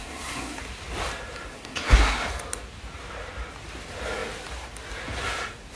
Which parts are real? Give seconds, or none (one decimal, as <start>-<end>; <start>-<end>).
0.6-1.5; 2.3-5.8